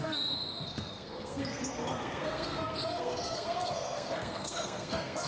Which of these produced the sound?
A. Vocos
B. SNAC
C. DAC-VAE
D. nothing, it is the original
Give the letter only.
B